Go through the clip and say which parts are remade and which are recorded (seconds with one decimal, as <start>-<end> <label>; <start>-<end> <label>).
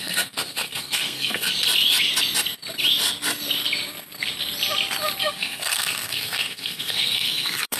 0.0-1.5 remade; 1.5-5.2 recorded; 5.2-7.8 remade